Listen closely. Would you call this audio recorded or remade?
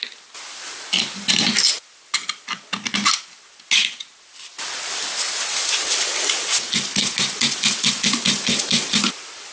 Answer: recorded